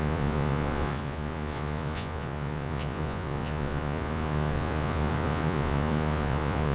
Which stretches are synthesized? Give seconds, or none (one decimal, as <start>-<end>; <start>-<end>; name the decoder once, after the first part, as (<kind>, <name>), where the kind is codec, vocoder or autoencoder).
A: 0.0-6.7 (vocoder, Vocos)